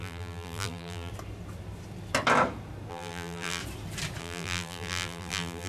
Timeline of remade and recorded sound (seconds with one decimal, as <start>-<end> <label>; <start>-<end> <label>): 0.0-1.1 remade; 1.1-2.9 recorded; 2.9-3.6 remade; 3.6-4.2 recorded; 4.2-5.7 remade

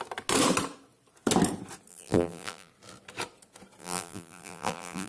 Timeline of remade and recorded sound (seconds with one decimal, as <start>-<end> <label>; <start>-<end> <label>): 0.0-1.9 recorded; 1.9-2.7 remade; 2.7-3.8 recorded; 3.8-5.1 remade

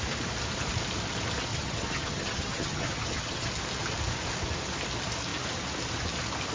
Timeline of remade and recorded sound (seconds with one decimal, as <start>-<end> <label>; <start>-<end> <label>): 0.0-1.5 recorded; 1.5-3.5 remade; 3.5-6.5 recorded